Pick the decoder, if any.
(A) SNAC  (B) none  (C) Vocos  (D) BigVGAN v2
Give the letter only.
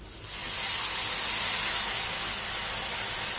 B